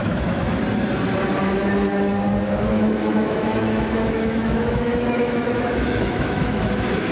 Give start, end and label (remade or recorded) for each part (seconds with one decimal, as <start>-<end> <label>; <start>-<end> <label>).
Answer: 0.0-0.6 remade; 0.6-2.7 recorded; 2.7-7.1 remade